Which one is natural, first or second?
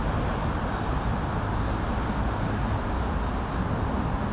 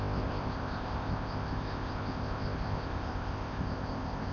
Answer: first